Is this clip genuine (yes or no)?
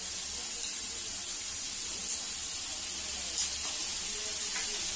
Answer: yes